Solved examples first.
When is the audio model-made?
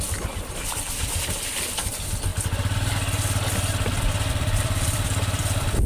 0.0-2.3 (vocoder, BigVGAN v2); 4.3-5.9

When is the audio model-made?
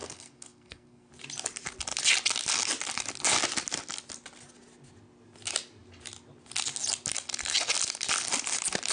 0.0-1.1 (codec, SNAC)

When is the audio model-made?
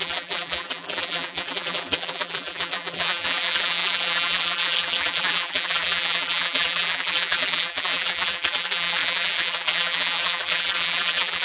0.0-11.4 (vocoder, BigVGAN v2)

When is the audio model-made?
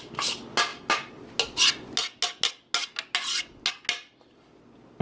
none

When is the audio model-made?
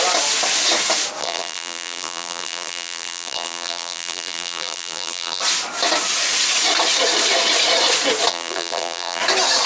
1.2-5.4 (vocoder, BigVGAN v2); 8.3-9.2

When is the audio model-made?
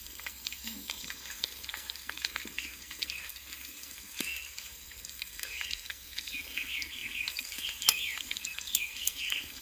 0.0-9.6 (codec, SNAC)